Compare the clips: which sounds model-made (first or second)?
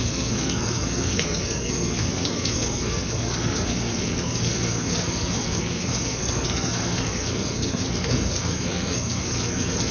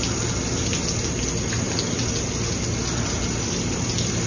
first